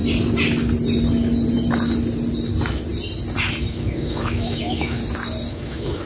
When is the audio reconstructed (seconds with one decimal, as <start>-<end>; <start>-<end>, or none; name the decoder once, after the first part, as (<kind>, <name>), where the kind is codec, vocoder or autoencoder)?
3.7-5.0 (autoencoder, DAC-VAE); 5.5-6.1